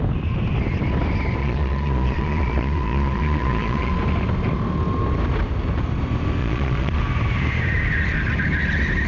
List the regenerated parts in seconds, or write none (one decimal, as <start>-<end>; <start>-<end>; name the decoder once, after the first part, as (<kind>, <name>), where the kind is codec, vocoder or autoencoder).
1.4-3.9 (vocoder, Vocos); 6.4-7.0